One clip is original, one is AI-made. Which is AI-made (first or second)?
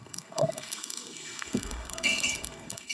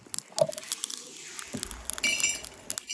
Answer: first